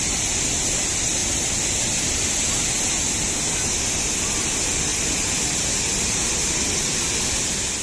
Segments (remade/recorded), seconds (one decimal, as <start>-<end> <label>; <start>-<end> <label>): 0.0-4.9 recorded; 4.9-7.1 remade; 7.1-7.8 recorded